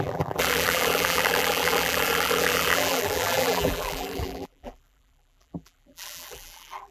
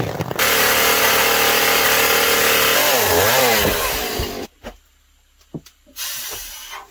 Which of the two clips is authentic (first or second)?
second